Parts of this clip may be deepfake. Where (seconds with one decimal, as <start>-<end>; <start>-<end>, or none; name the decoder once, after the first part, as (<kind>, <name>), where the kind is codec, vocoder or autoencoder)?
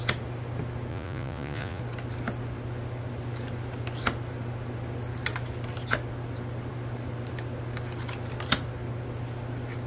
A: 0.9-1.8 (vocoder, Vocos)